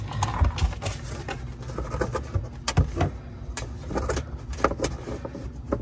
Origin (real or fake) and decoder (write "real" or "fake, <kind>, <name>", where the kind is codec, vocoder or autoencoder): real